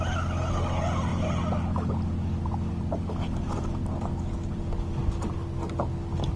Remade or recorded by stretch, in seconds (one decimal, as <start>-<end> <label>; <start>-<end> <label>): 0.0-6.4 recorded